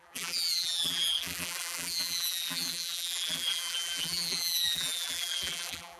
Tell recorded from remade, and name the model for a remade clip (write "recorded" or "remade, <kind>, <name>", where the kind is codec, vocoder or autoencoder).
remade, vocoder, BigVGAN v2